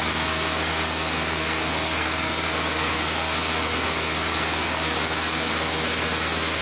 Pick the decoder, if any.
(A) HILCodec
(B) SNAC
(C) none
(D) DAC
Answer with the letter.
B